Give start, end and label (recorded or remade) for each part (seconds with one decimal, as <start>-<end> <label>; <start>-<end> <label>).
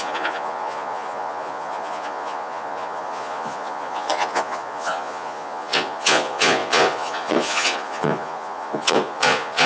0.0-9.7 remade